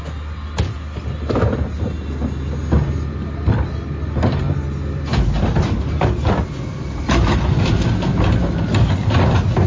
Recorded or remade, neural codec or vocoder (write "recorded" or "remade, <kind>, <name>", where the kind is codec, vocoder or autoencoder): recorded